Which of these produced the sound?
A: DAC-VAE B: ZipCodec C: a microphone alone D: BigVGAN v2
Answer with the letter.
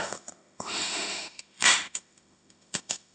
A